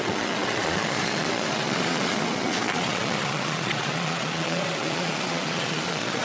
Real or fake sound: fake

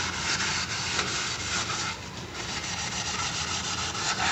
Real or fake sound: real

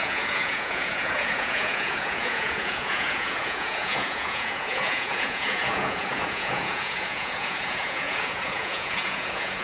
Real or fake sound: fake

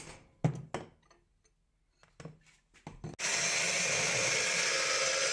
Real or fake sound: real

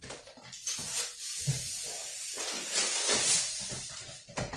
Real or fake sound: real